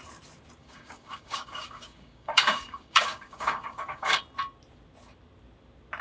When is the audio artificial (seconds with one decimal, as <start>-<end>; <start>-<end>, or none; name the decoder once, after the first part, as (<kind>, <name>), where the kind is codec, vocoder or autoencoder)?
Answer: 0.6-4.2 (codec, DAC)